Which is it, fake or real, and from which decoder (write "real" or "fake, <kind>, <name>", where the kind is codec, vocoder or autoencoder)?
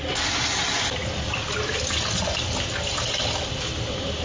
real